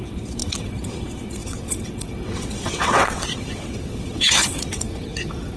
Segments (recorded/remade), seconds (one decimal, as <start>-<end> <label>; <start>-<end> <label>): 0.0-5.6 remade